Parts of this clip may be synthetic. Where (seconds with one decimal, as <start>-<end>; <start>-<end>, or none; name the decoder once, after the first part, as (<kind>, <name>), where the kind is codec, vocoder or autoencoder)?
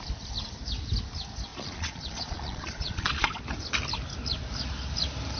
1.5-3.4 (vocoder, Vocos)